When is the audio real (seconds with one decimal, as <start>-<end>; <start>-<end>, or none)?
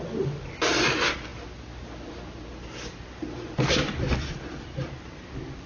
0.0-5.7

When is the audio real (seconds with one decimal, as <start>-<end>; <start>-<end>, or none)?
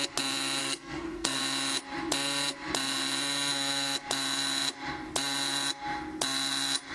0.0-0.6; 1.4-6.9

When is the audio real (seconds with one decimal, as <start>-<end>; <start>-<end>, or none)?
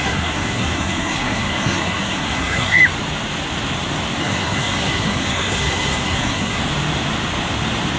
2.8-4.2; 6.6-8.0